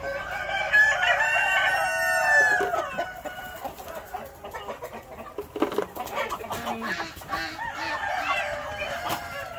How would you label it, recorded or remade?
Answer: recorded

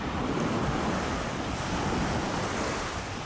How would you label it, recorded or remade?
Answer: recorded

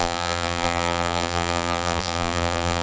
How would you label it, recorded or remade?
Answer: remade